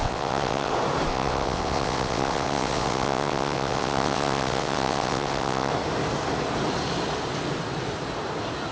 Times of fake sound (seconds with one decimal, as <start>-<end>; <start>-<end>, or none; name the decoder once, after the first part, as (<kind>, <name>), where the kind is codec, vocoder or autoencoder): 0.0-0.7 (vocoder, WaveNeXt); 1.1-5.7